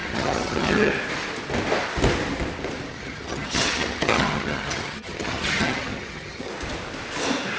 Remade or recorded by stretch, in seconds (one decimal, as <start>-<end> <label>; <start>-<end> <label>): 0.0-0.9 remade; 0.9-2.9 recorded; 2.9-6.5 remade; 6.5-7.6 recorded